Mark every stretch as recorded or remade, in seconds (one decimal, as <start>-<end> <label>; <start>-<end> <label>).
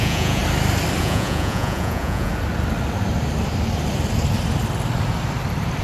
0.0-0.4 remade; 0.4-1.0 recorded; 1.0-2.3 remade; 2.3-5.8 recorded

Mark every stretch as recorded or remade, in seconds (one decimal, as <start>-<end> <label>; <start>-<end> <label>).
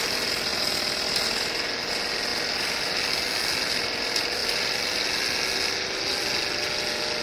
0.0-7.2 recorded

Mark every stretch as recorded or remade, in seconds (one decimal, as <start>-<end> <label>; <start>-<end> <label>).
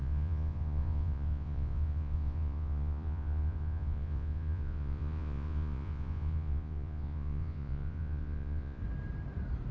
0.0-8.8 remade; 8.8-9.7 recorded